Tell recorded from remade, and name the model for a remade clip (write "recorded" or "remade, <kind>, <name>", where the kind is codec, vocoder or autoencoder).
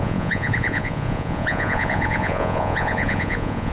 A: remade, vocoder, Vocos